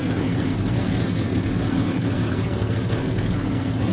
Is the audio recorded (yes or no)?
no